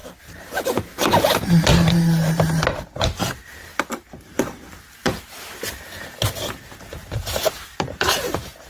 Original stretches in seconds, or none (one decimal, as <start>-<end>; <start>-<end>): 0.6-1.7; 3.2-7.0